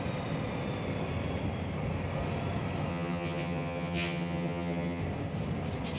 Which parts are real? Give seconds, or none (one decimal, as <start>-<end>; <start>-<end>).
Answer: 0.0-2.9; 5.0-6.0